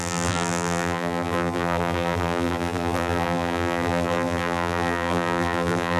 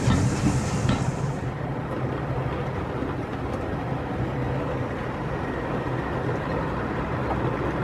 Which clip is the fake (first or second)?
first